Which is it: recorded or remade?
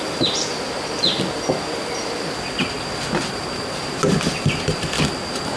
recorded